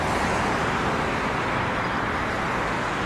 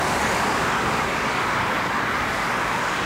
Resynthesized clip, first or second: second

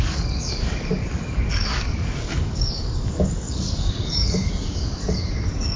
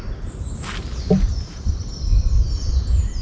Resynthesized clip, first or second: first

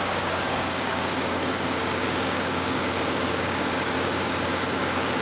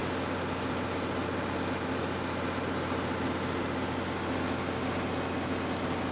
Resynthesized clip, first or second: first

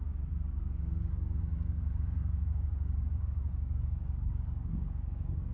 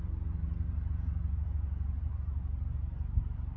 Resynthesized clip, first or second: first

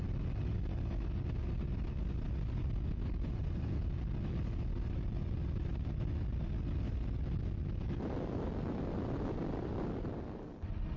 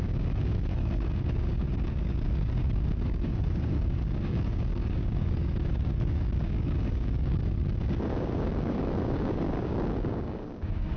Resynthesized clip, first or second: second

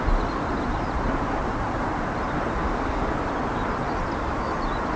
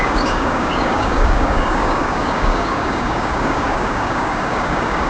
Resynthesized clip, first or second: second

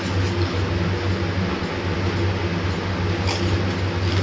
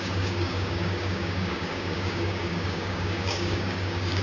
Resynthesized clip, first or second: second